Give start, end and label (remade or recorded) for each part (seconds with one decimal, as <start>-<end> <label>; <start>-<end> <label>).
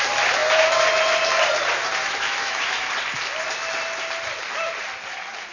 0.0-2.0 recorded; 2.0-2.9 remade; 2.9-5.5 recorded